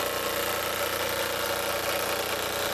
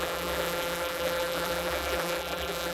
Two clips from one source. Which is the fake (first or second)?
second